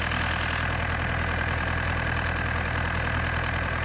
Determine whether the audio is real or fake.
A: real